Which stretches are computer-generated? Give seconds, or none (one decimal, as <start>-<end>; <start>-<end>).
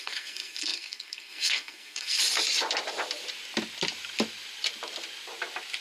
0.0-2.2